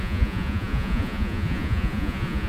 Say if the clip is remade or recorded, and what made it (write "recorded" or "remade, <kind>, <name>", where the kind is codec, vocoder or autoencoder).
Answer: remade, vocoder, Vocos